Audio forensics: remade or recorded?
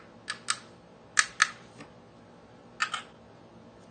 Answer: recorded